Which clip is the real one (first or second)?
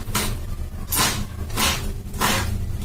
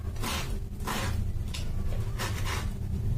first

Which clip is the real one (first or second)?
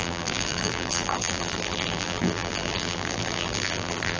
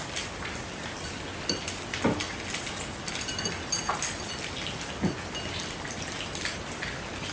second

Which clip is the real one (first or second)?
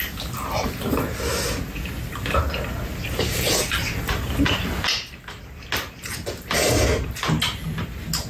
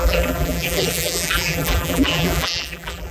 first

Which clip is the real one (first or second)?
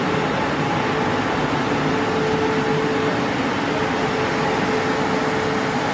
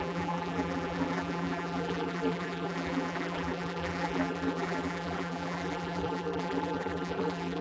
first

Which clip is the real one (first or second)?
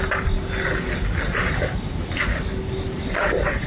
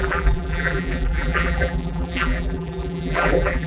first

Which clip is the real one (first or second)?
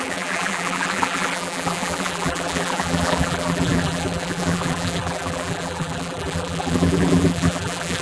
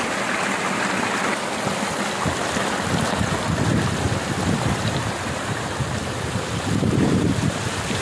second